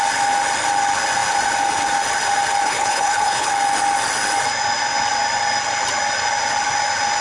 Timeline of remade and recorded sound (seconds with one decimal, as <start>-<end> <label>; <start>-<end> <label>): 0.0-2.6 recorded; 2.6-3.5 remade; 3.5-7.2 recorded